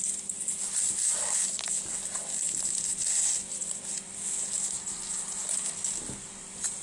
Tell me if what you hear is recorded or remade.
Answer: recorded